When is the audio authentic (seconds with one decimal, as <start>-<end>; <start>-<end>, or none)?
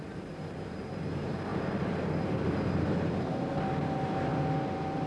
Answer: none